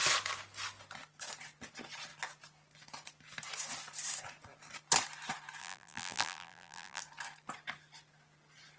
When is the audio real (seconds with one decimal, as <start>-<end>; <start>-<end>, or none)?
0.0-5.6; 7.0-8.8